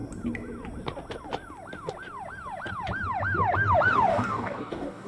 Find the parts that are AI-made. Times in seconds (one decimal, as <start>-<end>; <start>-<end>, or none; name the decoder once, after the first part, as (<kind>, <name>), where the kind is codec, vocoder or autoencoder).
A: 4.1-5.1 (codec, DAC)